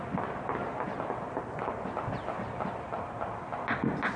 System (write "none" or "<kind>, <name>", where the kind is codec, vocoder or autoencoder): none